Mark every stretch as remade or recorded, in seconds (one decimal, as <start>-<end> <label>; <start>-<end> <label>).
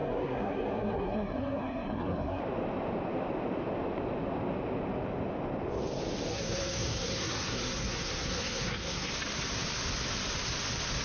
0.0-2.4 remade; 2.4-6.3 recorded; 6.3-9.1 remade; 9.1-11.0 recorded